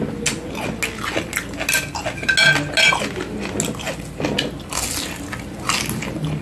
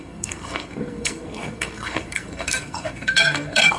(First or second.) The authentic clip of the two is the first